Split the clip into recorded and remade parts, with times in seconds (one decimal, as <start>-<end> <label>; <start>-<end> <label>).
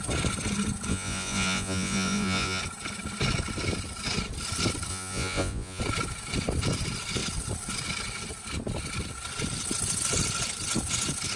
0.0-0.9 recorded; 0.9-2.6 remade; 2.6-4.9 recorded; 4.9-5.8 remade; 5.8-11.4 recorded